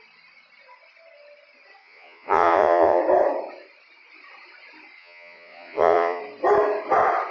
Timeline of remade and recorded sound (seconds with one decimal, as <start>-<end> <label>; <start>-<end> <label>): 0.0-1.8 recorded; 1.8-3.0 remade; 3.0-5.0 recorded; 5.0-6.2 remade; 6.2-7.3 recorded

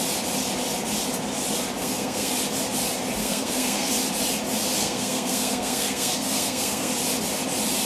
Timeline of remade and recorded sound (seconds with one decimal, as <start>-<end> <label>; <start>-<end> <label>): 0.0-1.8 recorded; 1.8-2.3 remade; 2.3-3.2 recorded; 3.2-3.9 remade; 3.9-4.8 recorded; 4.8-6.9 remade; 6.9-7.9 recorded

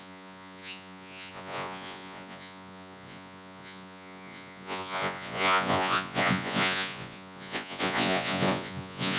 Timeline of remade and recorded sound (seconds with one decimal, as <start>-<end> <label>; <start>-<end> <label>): 0.0-9.2 remade

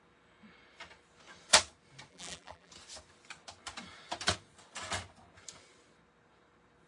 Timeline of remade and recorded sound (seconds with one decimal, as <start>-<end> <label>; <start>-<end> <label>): 0.0-2.1 recorded; 2.1-2.7 remade; 2.7-6.9 recorded

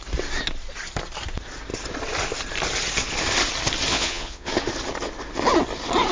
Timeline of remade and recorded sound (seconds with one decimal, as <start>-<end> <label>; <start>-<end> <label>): 0.0-3.9 recorded; 3.9-4.5 remade; 4.5-6.1 recorded

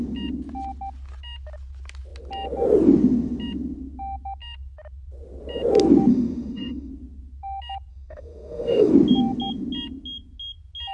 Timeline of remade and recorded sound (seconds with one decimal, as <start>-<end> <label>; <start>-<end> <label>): 0.0-6.1 recorded; 6.1-6.9 remade; 6.9-7.9 recorded; 7.9-8.9 remade; 8.9-10.9 recorded